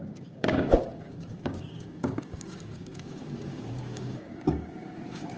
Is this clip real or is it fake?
fake